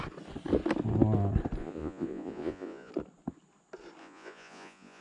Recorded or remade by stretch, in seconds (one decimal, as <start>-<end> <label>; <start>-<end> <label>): 0.0-1.6 recorded; 1.6-2.9 remade; 2.9-4.0 recorded; 4.0-5.0 remade